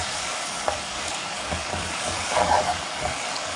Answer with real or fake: fake